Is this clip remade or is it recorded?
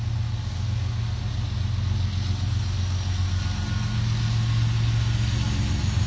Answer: recorded